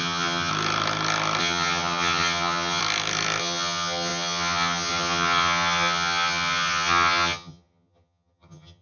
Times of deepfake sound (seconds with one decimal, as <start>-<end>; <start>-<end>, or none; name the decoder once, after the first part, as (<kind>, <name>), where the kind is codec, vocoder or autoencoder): 0.0-0.5 (vocoder, HiFi-GAN); 1.4-2.8; 3.4-8.8